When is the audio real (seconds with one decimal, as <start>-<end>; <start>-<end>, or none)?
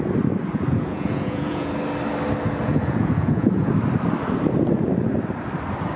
0.0-0.5; 1.7-2.6; 3.7-6.0